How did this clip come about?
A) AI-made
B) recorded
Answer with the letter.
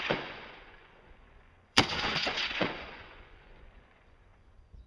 A